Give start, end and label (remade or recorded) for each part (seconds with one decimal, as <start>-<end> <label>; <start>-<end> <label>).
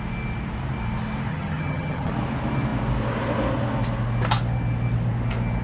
0.0-1.3 recorded; 1.3-2.1 remade; 2.1-5.6 recorded